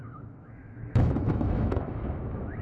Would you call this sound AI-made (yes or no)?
yes